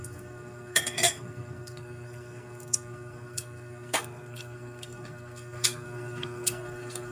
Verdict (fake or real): fake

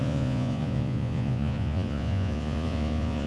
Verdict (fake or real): fake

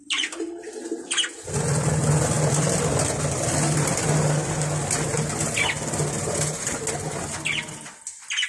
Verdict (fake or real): real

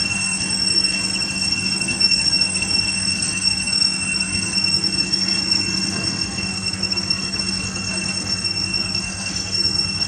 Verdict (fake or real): fake